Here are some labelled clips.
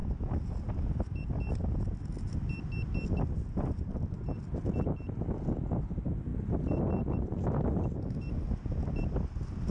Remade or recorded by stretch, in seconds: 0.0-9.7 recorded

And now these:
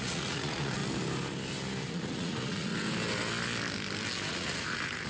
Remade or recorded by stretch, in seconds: 0.0-0.8 remade; 0.8-1.9 recorded; 1.9-2.7 remade; 2.7-4.3 recorded; 4.3-5.1 remade